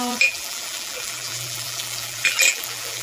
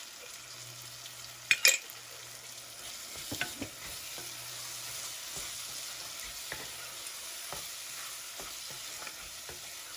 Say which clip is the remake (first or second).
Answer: first